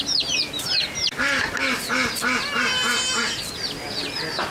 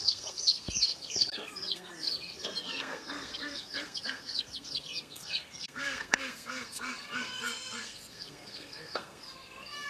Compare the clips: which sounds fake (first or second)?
second